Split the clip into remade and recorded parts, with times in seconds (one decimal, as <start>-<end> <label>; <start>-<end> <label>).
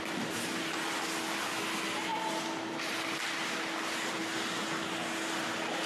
0.0-5.9 recorded